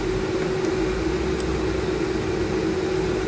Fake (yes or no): no